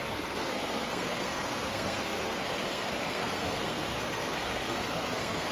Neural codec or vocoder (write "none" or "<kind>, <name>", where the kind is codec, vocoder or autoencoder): codec, SNAC